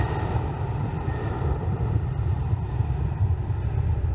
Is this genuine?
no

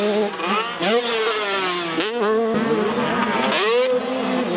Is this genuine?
yes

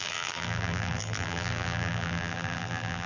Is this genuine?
no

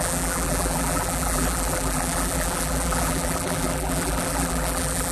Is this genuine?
no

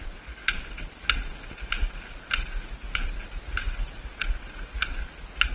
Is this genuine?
yes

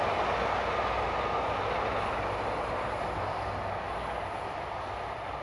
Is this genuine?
yes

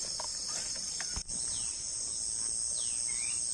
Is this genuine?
yes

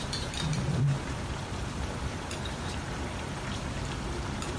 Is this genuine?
no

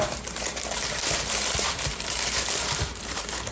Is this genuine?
no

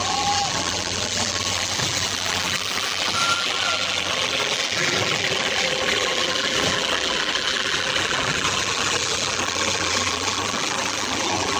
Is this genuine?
no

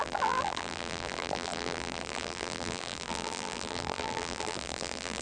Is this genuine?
no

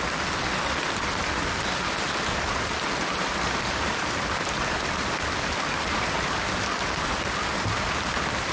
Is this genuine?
yes